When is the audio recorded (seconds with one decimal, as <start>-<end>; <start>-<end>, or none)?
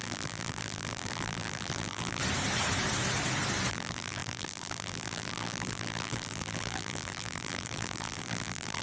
2.2-3.7